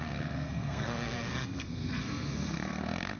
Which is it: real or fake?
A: fake